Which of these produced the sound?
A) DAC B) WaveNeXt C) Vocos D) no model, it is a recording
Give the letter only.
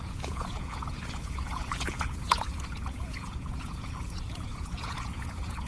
C